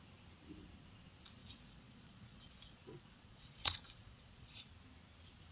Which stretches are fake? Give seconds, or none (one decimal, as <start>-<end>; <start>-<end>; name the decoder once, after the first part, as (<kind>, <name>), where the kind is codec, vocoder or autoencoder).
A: 1.4-4.7 (vocoder, Vocos)